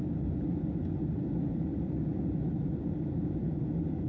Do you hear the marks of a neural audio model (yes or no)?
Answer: no